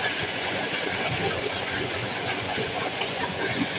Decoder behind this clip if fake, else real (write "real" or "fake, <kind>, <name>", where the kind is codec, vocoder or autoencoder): fake, vocoder, Vocos